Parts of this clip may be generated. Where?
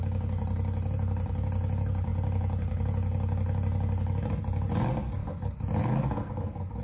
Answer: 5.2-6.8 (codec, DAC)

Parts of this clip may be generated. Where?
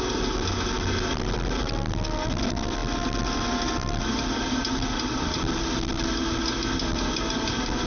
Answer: none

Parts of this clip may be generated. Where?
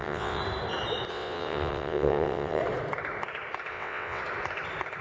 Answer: 0.0-0.4 (vocoder, WaveNeXt); 1.1-2.6; 3.7-4.2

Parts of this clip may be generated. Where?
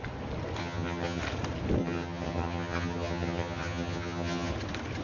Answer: 0.6-1.2 (vocoder, HiFi-GAN); 1.8-4.5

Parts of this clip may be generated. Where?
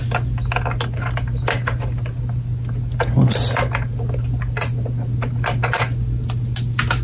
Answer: none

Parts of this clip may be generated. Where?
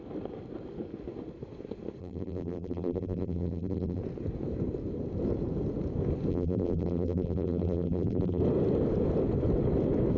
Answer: 2.0-4.0 (vocoder, BigVGAN v2); 6.3-8.4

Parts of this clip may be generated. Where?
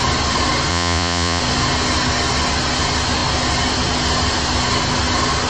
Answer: 0.7-1.4 (vocoder, Vocos)